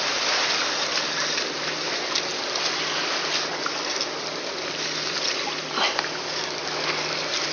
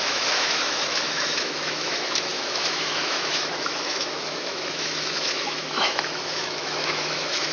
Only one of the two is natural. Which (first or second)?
first